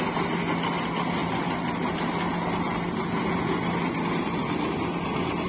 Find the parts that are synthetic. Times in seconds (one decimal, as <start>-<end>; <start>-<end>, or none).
none